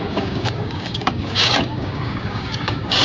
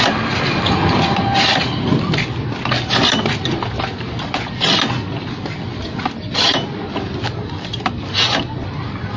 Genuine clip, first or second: second